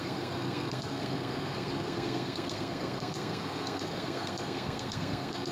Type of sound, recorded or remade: remade